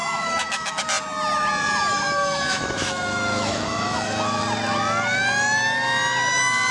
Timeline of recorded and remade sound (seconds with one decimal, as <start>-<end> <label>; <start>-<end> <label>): 0.0-0.8 remade; 0.8-1.9 recorded; 1.9-4.4 remade; 4.4-6.7 recorded